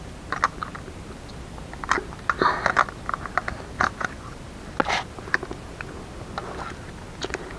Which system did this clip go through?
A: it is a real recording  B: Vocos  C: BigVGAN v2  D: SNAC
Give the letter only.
A